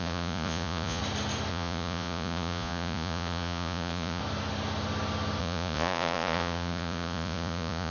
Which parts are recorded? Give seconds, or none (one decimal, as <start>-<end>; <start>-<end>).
1.0-1.5; 4.2-5.4